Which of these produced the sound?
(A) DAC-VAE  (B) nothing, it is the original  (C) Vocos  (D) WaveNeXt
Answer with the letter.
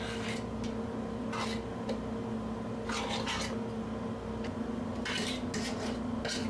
B